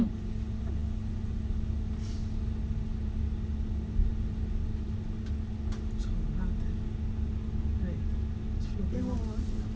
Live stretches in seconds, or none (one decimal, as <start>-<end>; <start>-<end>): 0.0-9.8